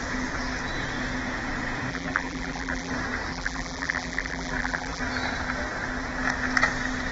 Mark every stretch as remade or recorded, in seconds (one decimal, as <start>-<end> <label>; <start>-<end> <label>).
0.0-1.9 recorded; 1.9-2.9 remade; 2.9-3.3 recorded; 3.3-5.0 remade; 5.0-7.1 recorded